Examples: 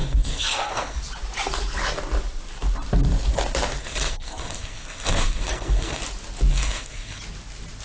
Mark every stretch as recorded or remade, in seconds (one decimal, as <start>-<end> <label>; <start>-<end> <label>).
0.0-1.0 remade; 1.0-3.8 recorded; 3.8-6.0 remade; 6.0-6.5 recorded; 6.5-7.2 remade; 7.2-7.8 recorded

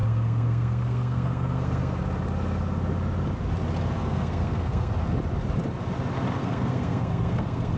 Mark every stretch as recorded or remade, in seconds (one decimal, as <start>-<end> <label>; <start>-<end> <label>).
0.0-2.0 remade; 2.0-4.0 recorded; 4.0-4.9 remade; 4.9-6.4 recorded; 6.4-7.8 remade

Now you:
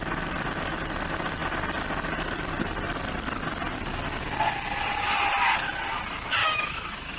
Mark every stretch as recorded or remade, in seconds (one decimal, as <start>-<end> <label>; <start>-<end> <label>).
0.0-6.4 recorded; 6.4-7.2 remade

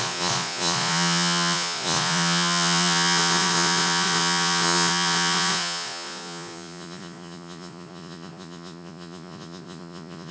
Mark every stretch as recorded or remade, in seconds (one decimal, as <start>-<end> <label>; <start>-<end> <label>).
0.0-10.3 remade

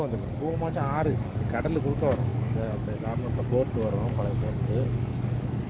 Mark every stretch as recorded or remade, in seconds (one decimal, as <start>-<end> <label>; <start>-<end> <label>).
0.0-5.7 remade